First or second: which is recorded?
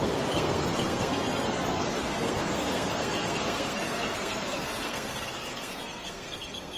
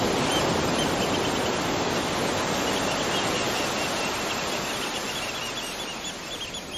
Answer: second